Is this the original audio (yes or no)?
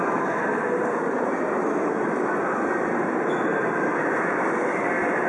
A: yes